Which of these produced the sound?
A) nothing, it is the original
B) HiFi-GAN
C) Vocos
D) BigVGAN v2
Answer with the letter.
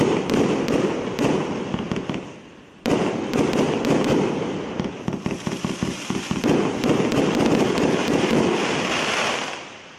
D